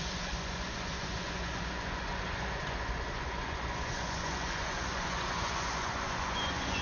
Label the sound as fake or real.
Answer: fake